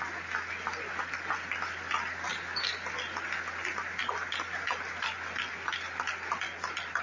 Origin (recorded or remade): recorded